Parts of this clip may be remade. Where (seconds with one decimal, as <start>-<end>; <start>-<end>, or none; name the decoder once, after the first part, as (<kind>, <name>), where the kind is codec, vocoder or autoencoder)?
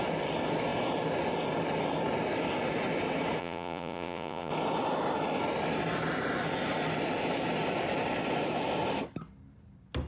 3.4-4.5 (vocoder, Vocos)